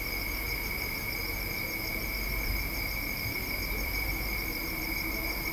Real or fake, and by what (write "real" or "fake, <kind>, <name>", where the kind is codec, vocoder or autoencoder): fake, vocoder, BigVGAN v2